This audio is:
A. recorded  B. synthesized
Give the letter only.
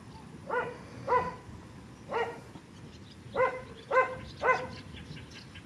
A